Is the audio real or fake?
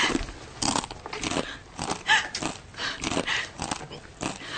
real